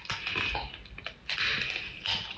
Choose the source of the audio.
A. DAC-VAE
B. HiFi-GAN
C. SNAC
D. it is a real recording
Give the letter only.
D